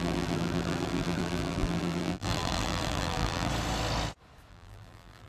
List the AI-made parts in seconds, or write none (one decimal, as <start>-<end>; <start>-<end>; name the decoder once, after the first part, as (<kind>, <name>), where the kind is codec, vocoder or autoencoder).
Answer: 0.0-3.5 (vocoder, BigVGAN v2); 4.5-5.3